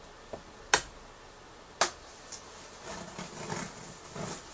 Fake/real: real